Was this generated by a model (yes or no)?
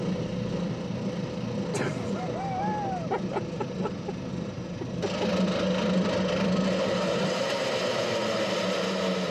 no